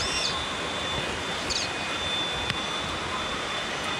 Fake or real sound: real